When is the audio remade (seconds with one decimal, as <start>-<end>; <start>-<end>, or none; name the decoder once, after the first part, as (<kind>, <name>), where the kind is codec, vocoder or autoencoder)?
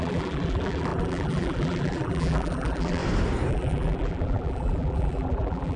0.0-3.0 (vocoder, BigVGAN v2); 3.5-5.8